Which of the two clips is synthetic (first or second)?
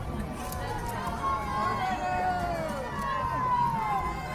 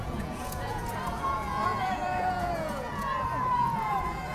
second